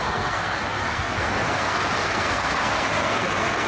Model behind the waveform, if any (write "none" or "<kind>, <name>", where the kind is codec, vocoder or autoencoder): codec, SNAC